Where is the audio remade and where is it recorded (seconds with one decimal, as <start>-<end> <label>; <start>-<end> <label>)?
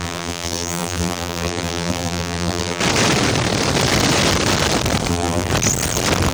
0.0-2.8 remade; 2.8-5.1 recorded; 5.1-5.5 remade; 5.5-6.3 recorded